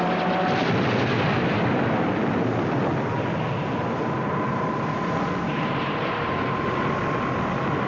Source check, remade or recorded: recorded